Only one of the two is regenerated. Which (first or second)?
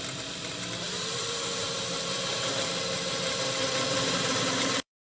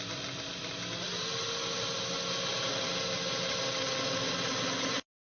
first